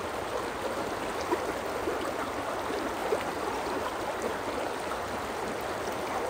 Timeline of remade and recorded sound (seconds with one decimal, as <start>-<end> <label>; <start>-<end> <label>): 0.0-6.3 recorded